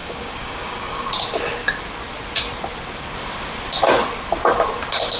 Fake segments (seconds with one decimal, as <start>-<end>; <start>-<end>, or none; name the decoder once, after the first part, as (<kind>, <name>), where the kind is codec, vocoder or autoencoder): 0.0-1.1 (codec, DAC)